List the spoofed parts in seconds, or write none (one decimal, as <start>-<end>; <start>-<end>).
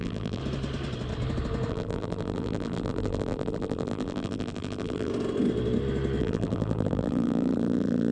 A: 0.0-0.4; 1.7-5.1; 6.2-8.1